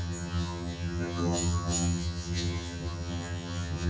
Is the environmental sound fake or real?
fake